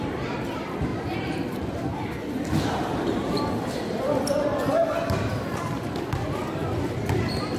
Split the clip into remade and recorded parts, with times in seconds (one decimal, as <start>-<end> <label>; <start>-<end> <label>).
0.0-0.9 remade; 0.9-3.3 recorded; 3.3-7.6 remade

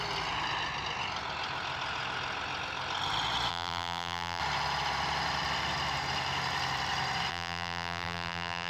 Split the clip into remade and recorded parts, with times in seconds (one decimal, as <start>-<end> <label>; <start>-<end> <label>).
0.0-3.5 recorded; 3.5-4.4 remade; 4.4-7.3 recorded; 7.3-8.7 remade

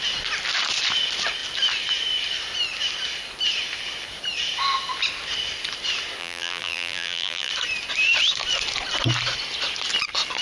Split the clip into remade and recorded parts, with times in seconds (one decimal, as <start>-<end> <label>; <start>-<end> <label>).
0.0-6.2 recorded; 6.2-7.5 remade; 7.5-10.4 recorded